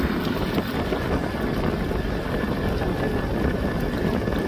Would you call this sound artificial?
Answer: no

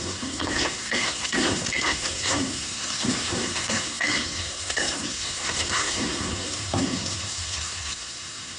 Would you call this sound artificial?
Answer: yes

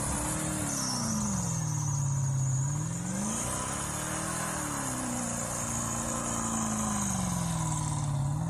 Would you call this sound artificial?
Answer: no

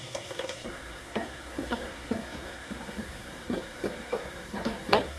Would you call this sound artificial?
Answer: yes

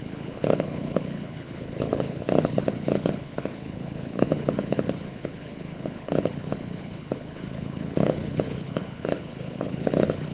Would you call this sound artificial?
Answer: yes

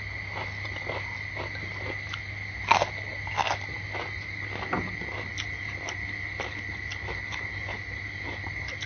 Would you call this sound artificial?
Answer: no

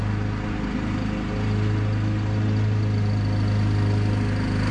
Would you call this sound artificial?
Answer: no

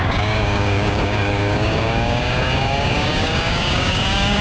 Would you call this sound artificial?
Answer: yes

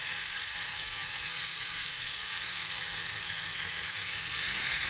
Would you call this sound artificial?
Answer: yes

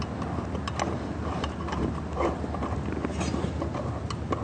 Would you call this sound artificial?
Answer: no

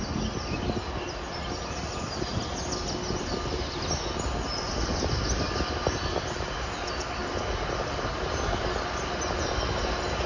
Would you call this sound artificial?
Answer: no